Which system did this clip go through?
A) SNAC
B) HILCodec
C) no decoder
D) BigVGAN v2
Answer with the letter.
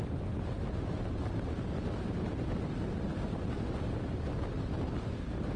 C